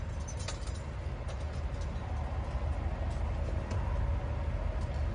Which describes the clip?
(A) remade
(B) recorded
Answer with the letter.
B